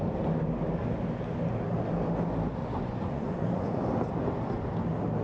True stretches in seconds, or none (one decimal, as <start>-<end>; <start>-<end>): 0.0-2.6; 3.9-5.2